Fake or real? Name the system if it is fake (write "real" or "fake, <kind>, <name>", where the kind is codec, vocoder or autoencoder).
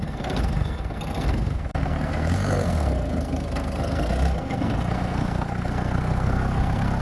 fake, codec, SNAC